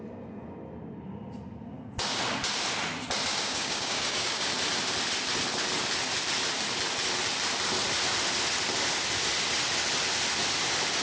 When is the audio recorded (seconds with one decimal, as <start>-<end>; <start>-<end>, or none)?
0.0-3.3; 4.5-11.0